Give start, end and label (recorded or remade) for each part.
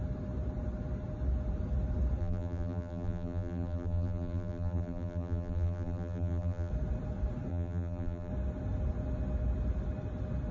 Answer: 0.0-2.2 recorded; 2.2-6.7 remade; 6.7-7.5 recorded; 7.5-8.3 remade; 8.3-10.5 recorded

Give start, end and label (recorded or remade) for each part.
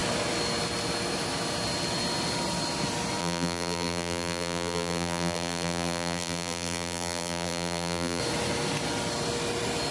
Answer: 0.0-3.2 recorded; 3.2-8.2 remade; 8.2-9.9 recorded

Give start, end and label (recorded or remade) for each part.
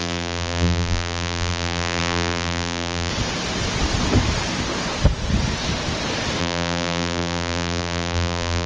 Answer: 0.0-3.1 remade; 3.1-6.4 recorded; 6.4-8.7 remade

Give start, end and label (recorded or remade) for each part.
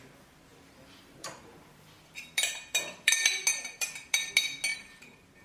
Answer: 0.0-0.5 recorded; 0.5-3.1 remade; 3.1-3.5 recorded; 3.5-4.3 remade; 4.3-4.7 recorded; 4.7-5.4 remade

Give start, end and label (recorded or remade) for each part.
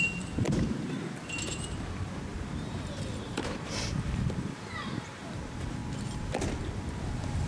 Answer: 0.0-5.8 remade; 5.8-6.6 recorded; 6.6-7.5 remade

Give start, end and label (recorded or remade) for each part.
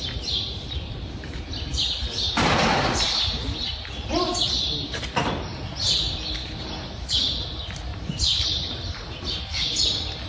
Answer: 0.0-7.9 recorded; 7.9-9.1 remade; 9.1-10.3 recorded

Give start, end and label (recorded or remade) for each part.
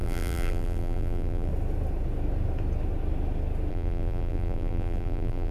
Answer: 0.0-1.5 remade; 1.5-3.7 recorded; 3.7-5.5 remade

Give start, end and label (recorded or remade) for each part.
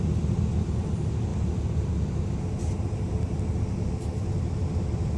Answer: 0.0-5.2 recorded